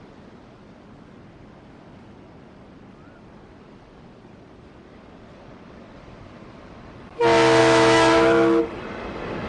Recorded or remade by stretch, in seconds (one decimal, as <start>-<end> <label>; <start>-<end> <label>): 0.0-7.6 recorded; 7.6-8.6 remade; 8.6-9.5 recorded